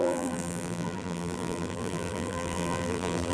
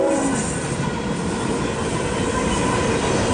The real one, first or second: second